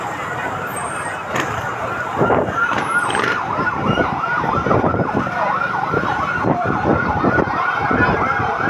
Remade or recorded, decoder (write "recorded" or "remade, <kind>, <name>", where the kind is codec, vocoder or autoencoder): remade, vocoder, BigVGAN v2